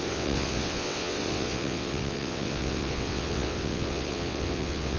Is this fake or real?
fake